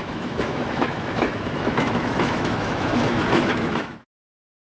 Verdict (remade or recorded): remade